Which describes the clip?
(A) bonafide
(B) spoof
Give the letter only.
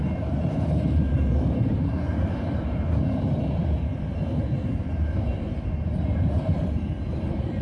B